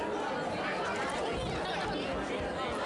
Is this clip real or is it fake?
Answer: real